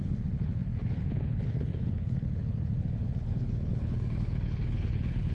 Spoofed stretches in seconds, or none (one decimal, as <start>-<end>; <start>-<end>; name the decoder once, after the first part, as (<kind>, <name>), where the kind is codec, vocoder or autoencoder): 0.0-5.3 (codec, HILCodec)